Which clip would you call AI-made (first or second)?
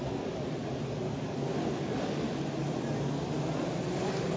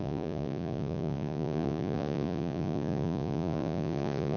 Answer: second